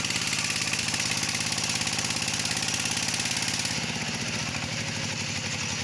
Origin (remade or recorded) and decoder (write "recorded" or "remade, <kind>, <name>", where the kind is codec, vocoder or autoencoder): recorded